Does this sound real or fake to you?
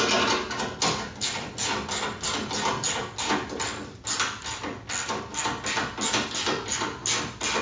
real